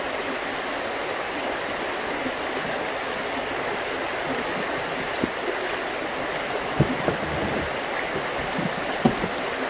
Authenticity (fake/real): real